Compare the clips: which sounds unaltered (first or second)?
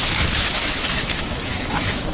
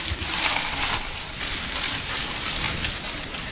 second